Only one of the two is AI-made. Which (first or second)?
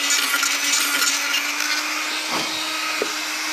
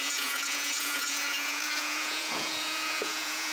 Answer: second